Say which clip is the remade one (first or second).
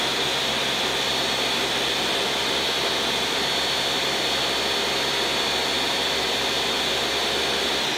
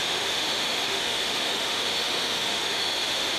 second